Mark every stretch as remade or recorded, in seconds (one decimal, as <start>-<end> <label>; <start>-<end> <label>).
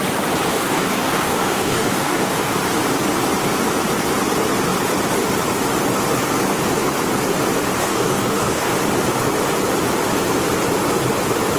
0.0-0.5 recorded; 0.5-2.6 remade; 2.6-7.8 recorded; 7.8-8.7 remade; 8.7-11.6 recorded